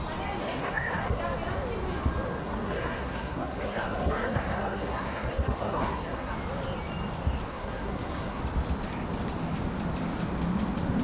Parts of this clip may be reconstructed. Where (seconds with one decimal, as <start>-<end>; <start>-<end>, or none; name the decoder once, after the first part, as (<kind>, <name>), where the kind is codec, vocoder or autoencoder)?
0.4-1.2 (codec, SNAC); 2.4-6.3; 7.5-8.4